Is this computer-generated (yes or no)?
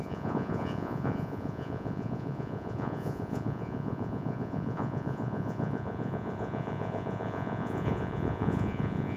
yes